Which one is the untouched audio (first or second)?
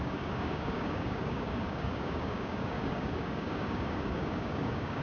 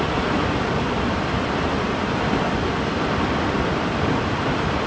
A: second